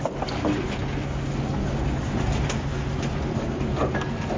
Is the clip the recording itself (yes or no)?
yes